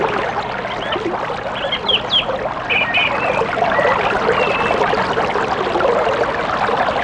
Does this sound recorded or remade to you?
recorded